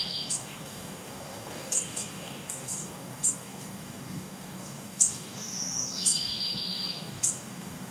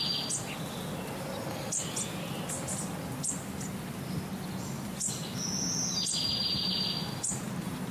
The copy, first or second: first